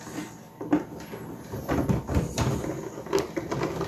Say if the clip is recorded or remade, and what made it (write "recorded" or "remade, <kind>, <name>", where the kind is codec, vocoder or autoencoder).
recorded